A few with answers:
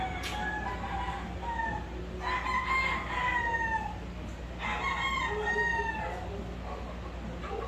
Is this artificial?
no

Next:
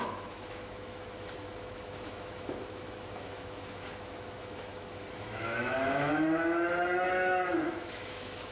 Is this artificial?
yes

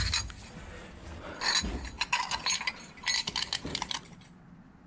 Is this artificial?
no